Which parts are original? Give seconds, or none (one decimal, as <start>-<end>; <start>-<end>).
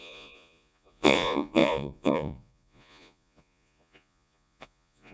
none